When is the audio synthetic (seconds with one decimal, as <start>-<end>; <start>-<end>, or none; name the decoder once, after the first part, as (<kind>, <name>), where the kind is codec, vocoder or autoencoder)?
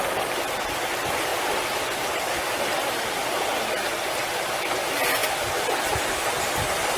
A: none